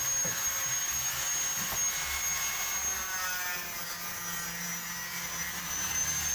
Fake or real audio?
real